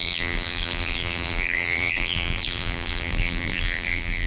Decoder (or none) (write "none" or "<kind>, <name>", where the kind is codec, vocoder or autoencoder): vocoder, BigVGAN v2